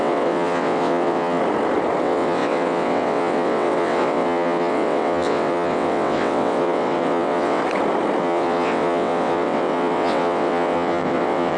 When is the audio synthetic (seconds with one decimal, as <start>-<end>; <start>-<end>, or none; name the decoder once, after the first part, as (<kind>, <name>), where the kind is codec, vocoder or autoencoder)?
0.0-1.4 (vocoder, WaveNeXt); 2.0-7.6; 8.2-11.6